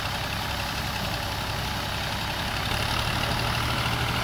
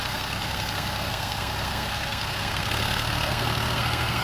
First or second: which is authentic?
first